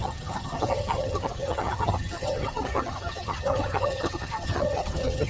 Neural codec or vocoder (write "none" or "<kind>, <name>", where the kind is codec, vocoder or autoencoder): vocoder, HiFi-GAN